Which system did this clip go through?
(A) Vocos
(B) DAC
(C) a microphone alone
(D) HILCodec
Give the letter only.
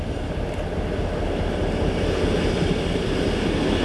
C